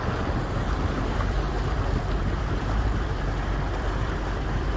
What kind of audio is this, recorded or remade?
remade